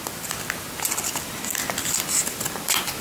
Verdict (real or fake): real